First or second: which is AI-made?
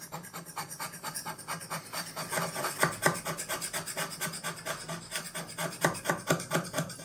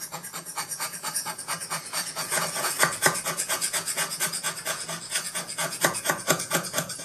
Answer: second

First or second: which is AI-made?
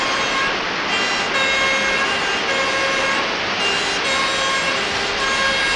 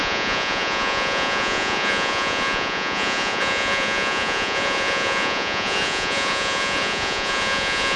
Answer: second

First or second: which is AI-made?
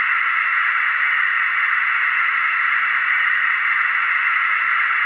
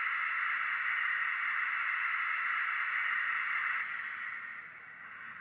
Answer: first